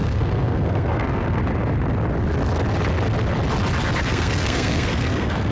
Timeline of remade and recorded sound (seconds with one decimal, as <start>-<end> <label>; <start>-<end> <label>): 0.0-1.4 remade; 1.4-4.0 recorded; 4.0-5.5 remade